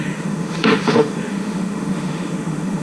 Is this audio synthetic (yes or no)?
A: yes